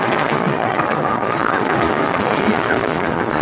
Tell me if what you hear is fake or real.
fake